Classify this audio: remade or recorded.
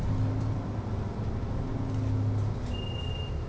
recorded